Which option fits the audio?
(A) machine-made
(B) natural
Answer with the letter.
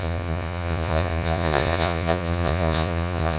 A